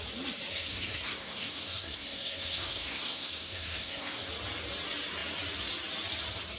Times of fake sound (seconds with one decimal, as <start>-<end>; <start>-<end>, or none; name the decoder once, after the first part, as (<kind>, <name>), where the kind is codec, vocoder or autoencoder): 0.5-4.3 (codec, SNAC)